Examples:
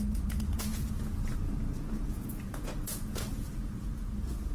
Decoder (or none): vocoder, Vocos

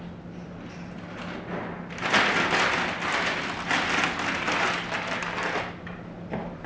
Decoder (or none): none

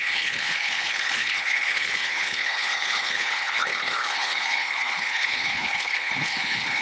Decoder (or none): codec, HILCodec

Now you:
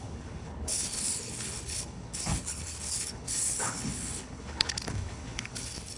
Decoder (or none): codec, HILCodec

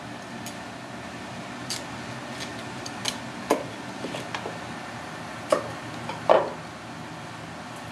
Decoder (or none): none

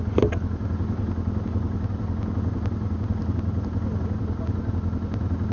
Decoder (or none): none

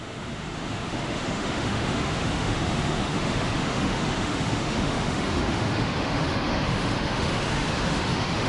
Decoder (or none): autoencoder, DAC-VAE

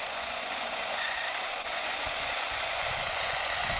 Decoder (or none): vocoder, Vocos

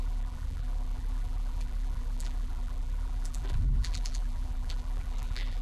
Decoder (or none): vocoder, BigVGAN v2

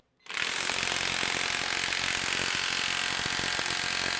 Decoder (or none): none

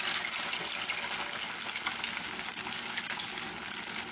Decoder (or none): none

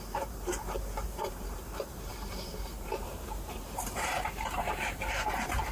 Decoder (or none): vocoder, BigVGAN v2